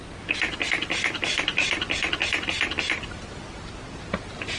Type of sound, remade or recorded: recorded